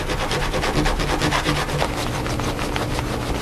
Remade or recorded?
recorded